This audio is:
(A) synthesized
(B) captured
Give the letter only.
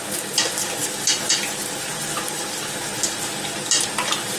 B